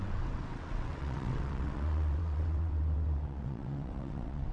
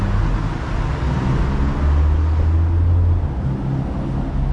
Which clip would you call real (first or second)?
second